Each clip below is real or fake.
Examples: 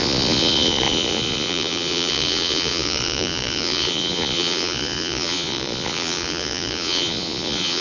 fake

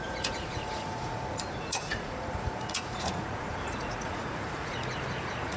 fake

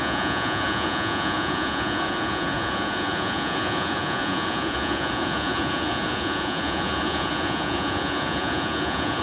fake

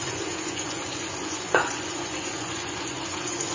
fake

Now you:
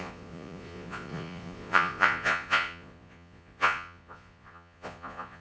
fake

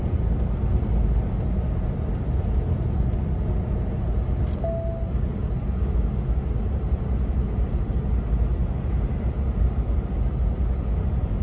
real